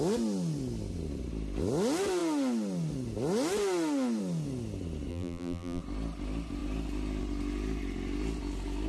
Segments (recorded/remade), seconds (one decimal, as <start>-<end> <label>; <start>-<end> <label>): 0.0-5.1 recorded; 5.1-5.8 remade; 5.8-8.9 recorded